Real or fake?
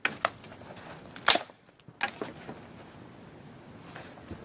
real